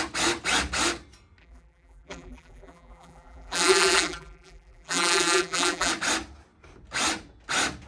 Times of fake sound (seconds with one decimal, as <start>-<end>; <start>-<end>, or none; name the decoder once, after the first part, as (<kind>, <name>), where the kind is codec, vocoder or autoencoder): 1.4-5.9 (vocoder, BigVGAN v2)